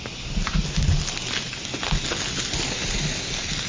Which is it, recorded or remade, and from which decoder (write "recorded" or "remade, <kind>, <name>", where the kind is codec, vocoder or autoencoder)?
recorded